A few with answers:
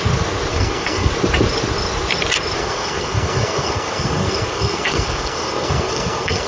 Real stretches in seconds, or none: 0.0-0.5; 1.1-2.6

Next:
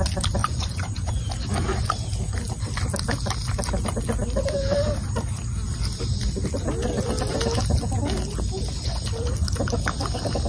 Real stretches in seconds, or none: 0.0-0.4; 1.1-10.5